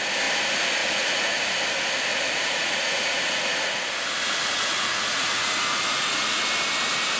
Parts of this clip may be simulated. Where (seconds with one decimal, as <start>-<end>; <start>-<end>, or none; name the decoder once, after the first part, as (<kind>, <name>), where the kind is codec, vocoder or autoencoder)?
0.8-1.5 (vocoder, Vocos); 2.1-6.4